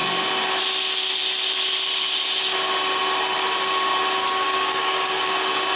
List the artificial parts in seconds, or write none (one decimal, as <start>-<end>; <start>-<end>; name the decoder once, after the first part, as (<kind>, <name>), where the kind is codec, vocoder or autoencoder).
4.2-5.3 (codec, DAC)